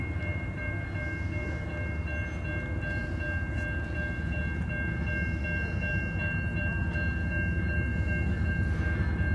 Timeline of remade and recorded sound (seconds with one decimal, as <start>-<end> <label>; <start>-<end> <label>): 0.0-9.3 recorded